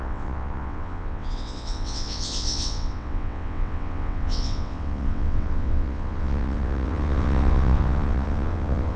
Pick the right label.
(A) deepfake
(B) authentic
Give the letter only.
A